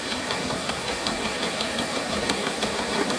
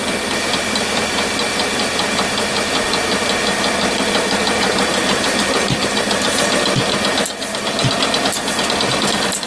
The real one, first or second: second